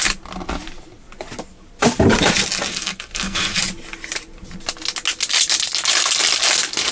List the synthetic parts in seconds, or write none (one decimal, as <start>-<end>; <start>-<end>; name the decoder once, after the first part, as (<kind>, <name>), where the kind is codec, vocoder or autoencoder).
2.7-3.6 (codec, SNAC)